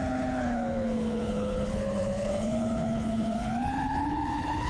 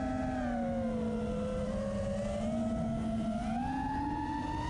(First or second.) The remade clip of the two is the first